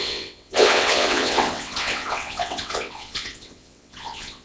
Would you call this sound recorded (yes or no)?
no